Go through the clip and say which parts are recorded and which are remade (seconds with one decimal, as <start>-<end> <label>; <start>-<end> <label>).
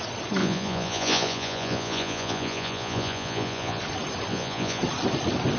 0.0-0.4 recorded; 0.4-3.8 remade; 3.8-4.3 recorded; 4.3-4.8 remade; 4.8-5.6 recorded